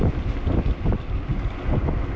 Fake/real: real